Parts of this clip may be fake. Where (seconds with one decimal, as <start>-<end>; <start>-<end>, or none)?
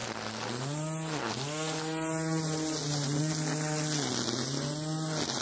none